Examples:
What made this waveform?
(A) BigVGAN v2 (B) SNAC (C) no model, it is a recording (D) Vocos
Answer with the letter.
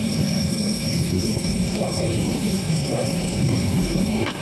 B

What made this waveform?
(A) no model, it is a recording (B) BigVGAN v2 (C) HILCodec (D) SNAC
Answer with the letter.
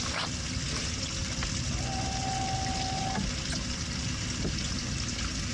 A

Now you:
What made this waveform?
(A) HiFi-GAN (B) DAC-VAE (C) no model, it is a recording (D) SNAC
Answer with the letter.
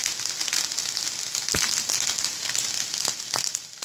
C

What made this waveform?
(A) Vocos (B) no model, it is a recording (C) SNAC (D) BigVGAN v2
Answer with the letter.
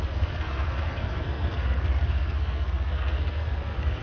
C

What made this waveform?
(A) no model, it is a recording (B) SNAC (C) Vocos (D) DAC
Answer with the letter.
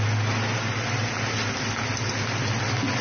A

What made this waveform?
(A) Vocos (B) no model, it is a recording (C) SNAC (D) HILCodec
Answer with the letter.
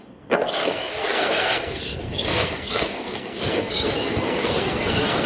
C